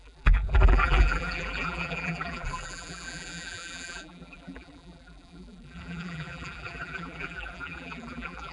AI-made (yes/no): yes